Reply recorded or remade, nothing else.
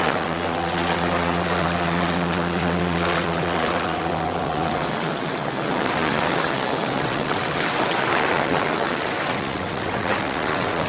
remade